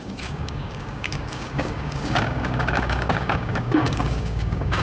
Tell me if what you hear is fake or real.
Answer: fake